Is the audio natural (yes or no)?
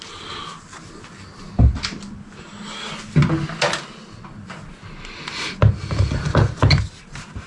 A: yes